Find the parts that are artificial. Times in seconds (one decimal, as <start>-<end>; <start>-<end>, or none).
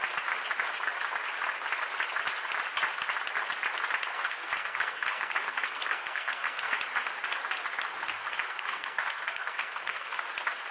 4.1-6.8; 7.9-10.2